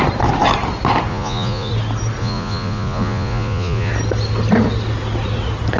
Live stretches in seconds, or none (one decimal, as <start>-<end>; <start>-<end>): 0.0-1.1; 1.7-2.2; 3.9-5.8